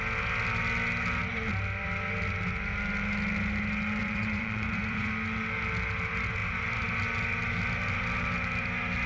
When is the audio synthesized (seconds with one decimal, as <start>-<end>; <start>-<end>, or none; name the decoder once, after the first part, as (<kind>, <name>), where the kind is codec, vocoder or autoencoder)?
4.0-5.1 (vocoder, Vocos)